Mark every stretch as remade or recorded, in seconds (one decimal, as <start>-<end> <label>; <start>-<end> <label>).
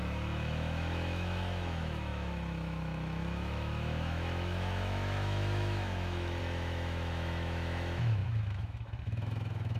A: 0.0-9.8 remade